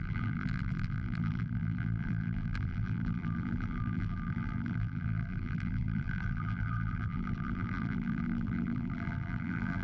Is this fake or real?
fake